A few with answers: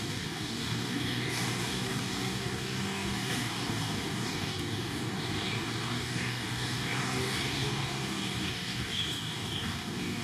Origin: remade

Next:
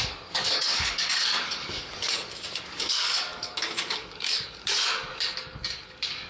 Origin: remade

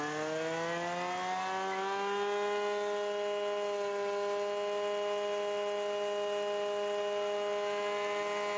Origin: recorded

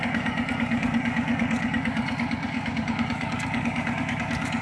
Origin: remade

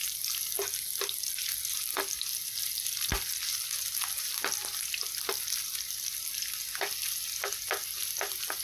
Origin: recorded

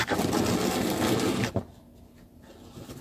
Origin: recorded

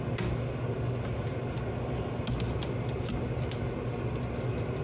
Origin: recorded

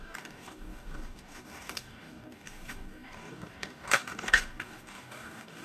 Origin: remade